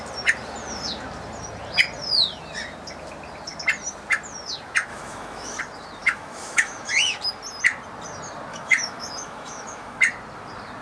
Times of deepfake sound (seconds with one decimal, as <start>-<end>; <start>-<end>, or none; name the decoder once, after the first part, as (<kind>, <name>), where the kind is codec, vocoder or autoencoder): 4.9-5.6 (autoencoder, DAC-VAE); 6.0-7.2; 8.5-10.0